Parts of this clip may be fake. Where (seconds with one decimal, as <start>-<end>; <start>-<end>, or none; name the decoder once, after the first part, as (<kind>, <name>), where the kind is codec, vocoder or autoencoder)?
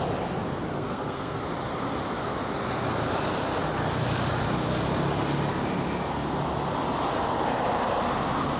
0.7-1.4 (codec, SNAC)